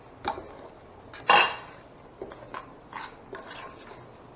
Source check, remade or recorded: recorded